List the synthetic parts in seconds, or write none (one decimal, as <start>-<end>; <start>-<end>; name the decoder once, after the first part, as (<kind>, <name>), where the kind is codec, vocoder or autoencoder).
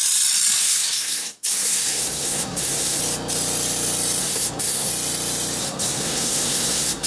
0.6-3.0 (codec, SNAC); 4.2-4.9; 5.6-7.1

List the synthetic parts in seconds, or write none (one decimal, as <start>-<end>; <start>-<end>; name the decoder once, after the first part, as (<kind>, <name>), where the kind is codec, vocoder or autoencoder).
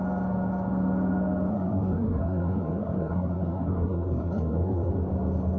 1.5-4.9 (codec, SNAC)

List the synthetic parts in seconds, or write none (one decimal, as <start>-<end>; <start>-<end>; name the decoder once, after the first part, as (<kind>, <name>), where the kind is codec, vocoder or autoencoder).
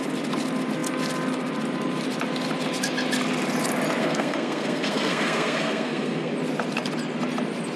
4.0-6.3 (codec, SNAC)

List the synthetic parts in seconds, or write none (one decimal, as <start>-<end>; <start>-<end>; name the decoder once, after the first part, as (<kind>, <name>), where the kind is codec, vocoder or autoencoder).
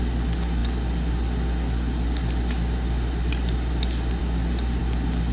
none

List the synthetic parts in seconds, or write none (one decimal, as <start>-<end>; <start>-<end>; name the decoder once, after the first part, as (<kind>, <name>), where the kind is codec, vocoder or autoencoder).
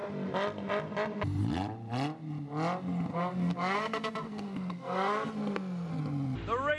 3.1-6.0 (codec, SNAC)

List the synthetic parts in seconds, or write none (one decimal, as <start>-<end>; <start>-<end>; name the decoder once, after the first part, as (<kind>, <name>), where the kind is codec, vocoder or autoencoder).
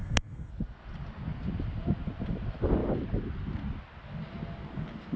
0.0-0.5 (codec, SNAC)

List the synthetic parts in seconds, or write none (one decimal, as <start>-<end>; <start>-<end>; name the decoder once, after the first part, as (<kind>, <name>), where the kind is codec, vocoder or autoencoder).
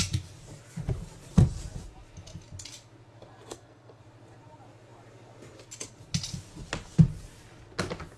3.5-4.0 (codec, SNAC)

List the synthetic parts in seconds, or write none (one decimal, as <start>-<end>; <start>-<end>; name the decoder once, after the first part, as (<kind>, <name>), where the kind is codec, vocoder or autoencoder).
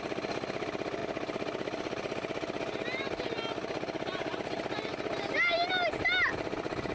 none